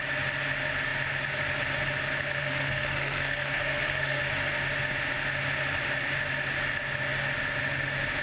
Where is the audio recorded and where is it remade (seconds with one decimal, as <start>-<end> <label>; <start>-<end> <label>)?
0.0-2.4 recorded; 2.4-4.2 remade; 4.2-8.2 recorded